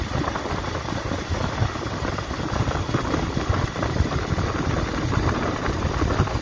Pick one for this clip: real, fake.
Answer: real